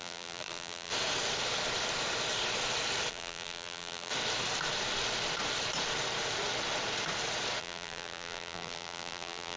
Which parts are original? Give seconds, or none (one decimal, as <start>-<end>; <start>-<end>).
0.9-3.1; 4.1-7.6